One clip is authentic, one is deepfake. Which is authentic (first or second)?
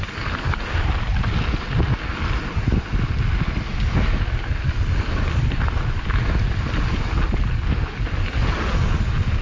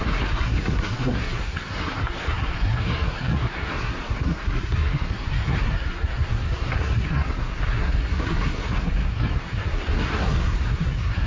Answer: first